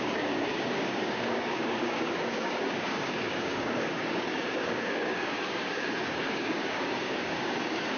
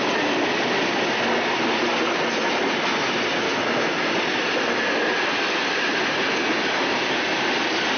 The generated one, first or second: first